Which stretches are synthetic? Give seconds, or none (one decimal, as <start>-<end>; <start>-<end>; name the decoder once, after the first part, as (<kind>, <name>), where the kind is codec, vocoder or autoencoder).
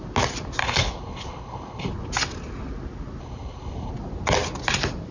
0.6-1.9 (codec, HILCodec); 3.2-3.9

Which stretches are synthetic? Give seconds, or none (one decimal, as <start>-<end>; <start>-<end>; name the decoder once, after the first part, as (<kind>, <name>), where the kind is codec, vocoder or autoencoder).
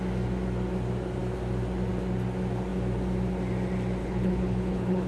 4.0-5.1 (codec, HILCodec)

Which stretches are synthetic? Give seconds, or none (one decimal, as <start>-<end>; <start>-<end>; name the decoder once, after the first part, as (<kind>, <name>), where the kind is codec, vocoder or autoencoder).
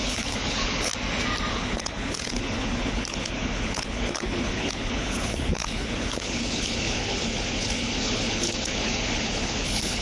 0.0-0.9 (codec, HILCodec); 1.5-10.0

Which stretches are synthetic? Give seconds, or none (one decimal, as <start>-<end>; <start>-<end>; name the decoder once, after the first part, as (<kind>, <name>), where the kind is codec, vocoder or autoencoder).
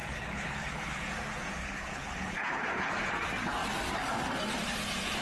0.0-1.0 (codec, HILCodec); 1.6-2.9